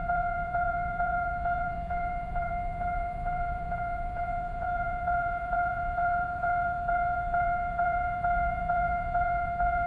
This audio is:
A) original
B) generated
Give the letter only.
B